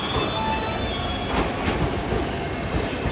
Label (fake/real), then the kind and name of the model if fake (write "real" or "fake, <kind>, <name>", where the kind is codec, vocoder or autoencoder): real